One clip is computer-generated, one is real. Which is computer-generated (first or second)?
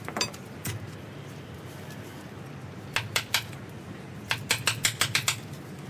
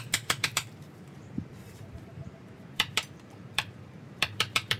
second